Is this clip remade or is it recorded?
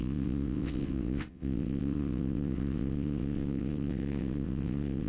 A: remade